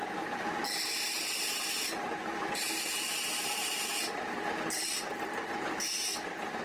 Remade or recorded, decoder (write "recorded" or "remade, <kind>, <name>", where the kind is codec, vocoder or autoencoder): remade, vocoder, BigVGAN v2